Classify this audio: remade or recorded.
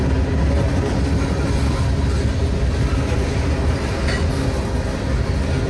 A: recorded